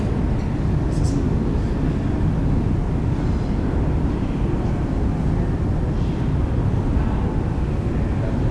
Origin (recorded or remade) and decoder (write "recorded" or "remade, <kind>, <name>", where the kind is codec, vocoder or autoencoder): recorded